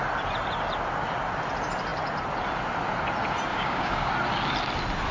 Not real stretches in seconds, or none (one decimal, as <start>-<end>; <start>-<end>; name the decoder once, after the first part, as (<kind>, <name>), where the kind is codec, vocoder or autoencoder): 3.5-4.1 (codec, DAC)